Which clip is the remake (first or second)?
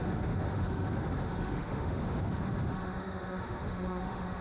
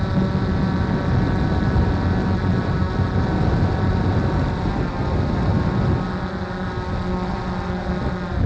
first